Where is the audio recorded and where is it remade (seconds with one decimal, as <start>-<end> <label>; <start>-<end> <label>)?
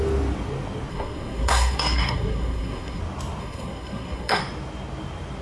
0.0-0.9 recorded; 0.9-3.0 remade; 3.0-3.4 recorded; 3.4-4.4 remade; 4.4-5.4 recorded